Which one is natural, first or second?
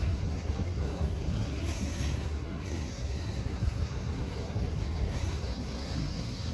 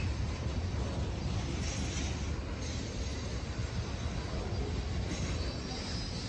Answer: second